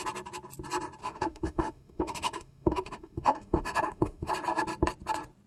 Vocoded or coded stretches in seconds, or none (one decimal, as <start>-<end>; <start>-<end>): 1.0-4.3